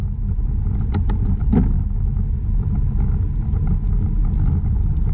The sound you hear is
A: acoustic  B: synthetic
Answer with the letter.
A